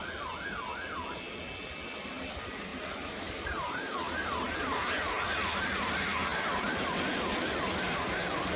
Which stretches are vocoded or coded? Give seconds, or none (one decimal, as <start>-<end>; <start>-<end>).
none